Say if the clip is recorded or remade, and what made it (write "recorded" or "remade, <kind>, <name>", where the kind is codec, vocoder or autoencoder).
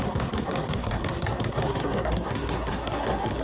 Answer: remade, codec, SNAC